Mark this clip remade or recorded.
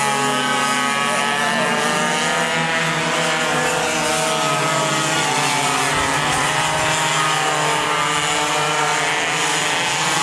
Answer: recorded